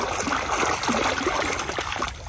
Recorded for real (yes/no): yes